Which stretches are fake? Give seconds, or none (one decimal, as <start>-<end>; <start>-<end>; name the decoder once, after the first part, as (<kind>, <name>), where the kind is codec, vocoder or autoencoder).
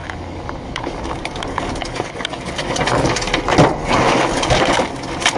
0.0-3.2 (codec, DAC); 3.8-4.9